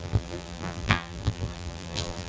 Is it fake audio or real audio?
fake